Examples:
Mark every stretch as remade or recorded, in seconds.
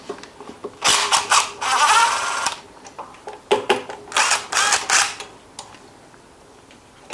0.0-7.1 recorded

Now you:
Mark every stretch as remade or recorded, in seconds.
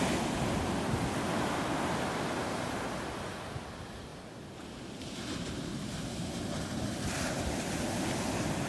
0.0-8.7 recorded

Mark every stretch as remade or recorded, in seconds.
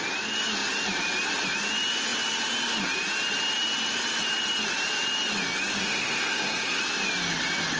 0.0-5.8 recorded; 5.8-6.8 remade; 6.8-7.8 recorded